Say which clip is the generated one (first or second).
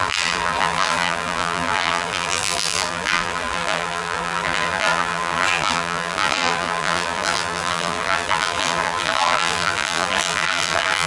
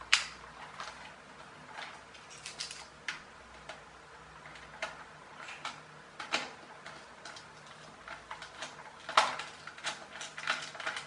first